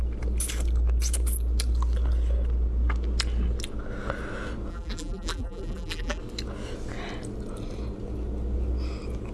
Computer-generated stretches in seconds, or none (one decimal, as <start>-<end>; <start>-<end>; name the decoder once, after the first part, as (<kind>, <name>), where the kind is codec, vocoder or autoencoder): 4.7-6.2 (vocoder, BigVGAN v2)